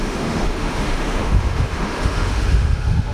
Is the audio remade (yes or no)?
yes